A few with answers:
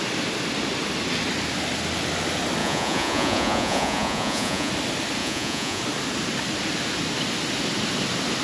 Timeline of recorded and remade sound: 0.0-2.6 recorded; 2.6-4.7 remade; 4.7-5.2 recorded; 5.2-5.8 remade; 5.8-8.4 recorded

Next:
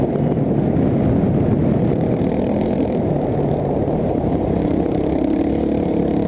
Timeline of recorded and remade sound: 0.0-1.6 recorded; 1.6-5.4 remade; 5.4-6.3 recorded

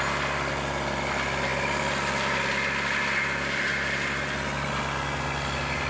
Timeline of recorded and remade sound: 0.0-5.9 recorded

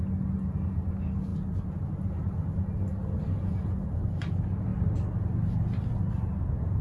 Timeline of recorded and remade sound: 0.0-6.8 recorded

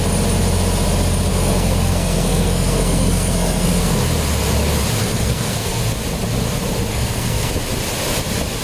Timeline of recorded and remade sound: 0.0-1.3 recorded; 1.3-4.0 remade; 4.0-5.0 recorded; 5.0-5.8 remade; 5.8-6.9 recorded; 6.9-7.5 remade; 7.5-8.6 recorded

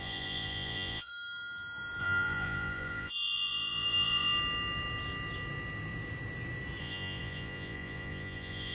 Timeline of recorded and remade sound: 0.0-1.1 remade; 1.1-2.0 recorded; 2.0-4.3 remade; 4.3-6.8 recorded; 6.8-8.7 remade

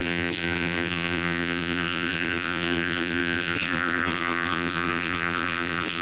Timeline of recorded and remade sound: 0.0-6.0 remade

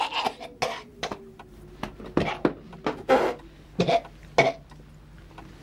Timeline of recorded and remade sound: 0.0-5.6 recorded